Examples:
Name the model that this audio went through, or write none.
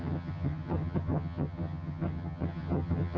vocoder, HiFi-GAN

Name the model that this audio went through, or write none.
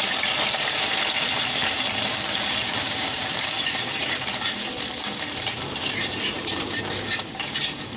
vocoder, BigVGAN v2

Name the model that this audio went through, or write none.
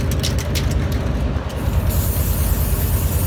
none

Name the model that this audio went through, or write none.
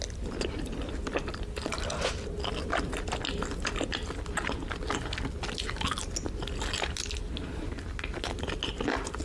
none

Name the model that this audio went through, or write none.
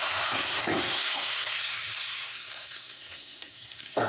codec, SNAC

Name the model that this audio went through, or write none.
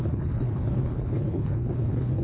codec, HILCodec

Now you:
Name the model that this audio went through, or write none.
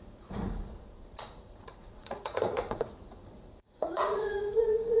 vocoder, Vocos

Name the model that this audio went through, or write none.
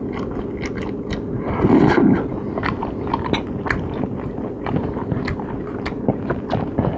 none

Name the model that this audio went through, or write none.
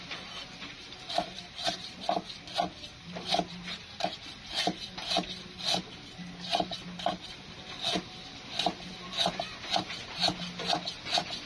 none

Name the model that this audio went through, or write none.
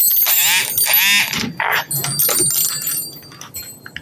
none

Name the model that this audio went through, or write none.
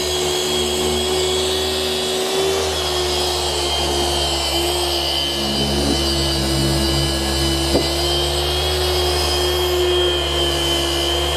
none